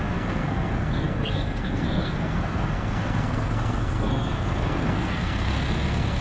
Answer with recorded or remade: remade